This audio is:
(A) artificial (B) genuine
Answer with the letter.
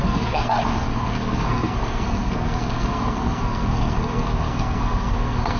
A